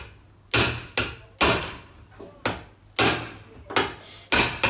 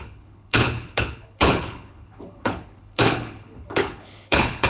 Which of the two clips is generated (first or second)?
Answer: second